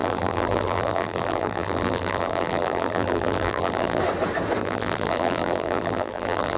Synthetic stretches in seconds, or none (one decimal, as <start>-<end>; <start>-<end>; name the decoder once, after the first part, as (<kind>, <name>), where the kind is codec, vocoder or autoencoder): 0.0-4.0 (vocoder, BigVGAN v2); 4.6-6.6